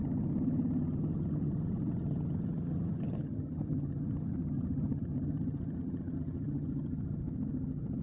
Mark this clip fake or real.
fake